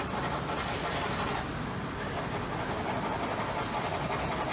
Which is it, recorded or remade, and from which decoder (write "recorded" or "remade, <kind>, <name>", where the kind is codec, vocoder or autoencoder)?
recorded